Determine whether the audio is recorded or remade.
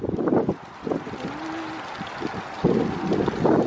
recorded